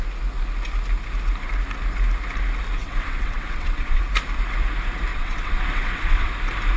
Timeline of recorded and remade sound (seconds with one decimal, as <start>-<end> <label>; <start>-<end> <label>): 0.0-2.8 recorded; 2.8-4.0 remade; 4.0-5.1 recorded; 5.1-6.3 remade; 6.3-6.8 recorded